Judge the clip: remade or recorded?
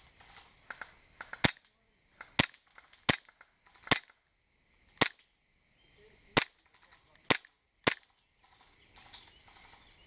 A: recorded